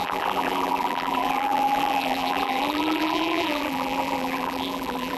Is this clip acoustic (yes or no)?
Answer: no